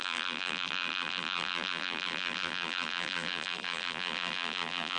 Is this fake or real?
fake